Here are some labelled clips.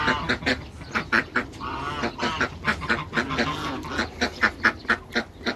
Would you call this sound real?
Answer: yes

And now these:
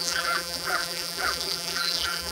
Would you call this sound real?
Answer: no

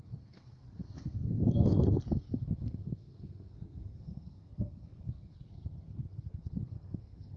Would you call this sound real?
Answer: no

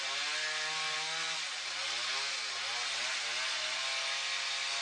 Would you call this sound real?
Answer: yes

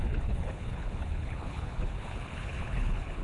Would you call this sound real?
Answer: no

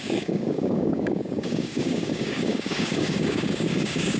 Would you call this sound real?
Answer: no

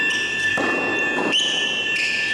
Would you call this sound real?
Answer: yes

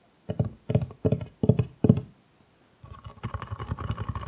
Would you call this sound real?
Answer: yes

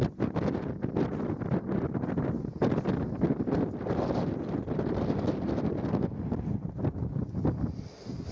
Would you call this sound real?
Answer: yes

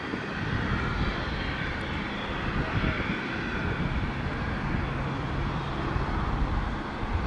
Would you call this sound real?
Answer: yes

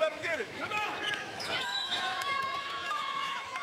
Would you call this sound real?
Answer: no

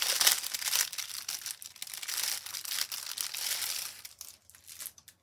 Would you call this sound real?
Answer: yes